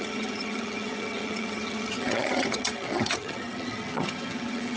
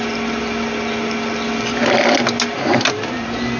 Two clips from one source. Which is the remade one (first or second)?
first